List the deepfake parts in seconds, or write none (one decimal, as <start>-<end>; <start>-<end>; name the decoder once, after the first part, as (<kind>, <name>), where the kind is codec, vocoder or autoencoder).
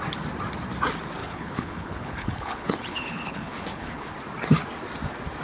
1.2-4.1 (codec, HILCodec)